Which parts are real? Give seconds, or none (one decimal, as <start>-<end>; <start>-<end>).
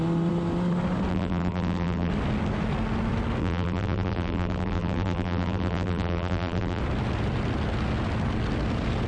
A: 0.0-1.1; 2.1-3.4; 6.8-9.1